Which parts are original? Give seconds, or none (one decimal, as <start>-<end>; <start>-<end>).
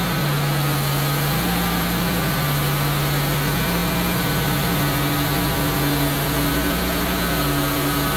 0.0-8.2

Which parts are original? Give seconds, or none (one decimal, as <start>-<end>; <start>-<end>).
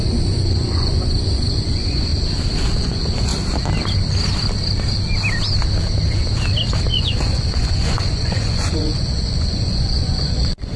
2.1-2.8; 3.3-6.9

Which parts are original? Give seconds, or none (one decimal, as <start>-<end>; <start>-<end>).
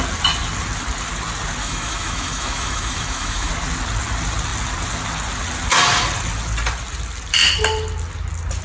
0.0-1.6; 3.5-8.6